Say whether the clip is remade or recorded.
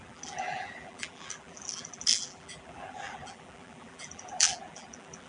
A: remade